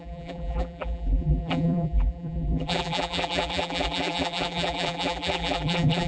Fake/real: fake